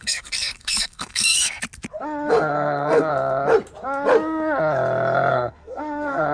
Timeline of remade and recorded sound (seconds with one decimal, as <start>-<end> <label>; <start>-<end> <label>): 0.0-1.6 remade; 1.6-2.3 recorded; 2.3-3.1 remade; 3.1-5.3 recorded; 5.3-6.3 remade